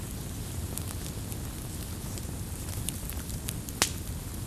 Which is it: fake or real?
real